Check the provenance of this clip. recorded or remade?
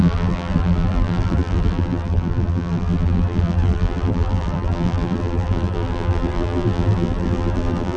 remade